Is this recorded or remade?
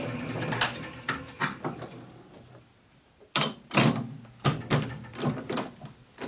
recorded